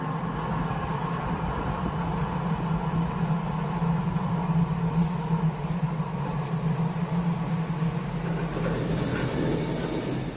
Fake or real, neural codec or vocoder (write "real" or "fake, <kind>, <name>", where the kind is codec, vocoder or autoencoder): real